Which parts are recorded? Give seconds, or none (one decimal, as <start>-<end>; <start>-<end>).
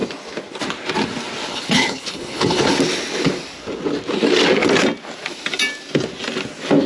0.0-1.5; 2.7-6.9